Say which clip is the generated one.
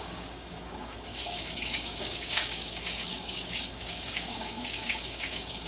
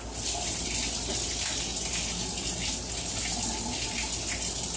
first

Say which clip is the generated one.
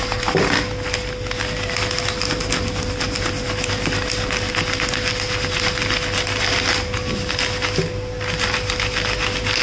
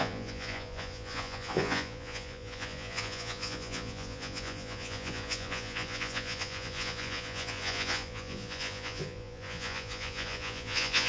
second